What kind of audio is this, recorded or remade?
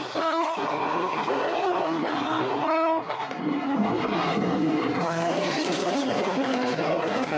remade